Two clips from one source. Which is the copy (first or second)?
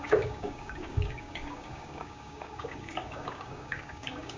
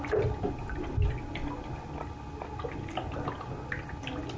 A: first